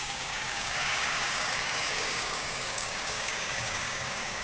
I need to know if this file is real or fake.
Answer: fake